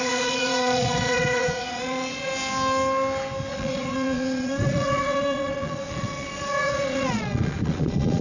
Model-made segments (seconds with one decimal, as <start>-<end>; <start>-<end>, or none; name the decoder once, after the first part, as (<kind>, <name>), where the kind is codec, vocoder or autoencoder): 0.0-2.3 (vocoder, Vocos); 3.5-8.2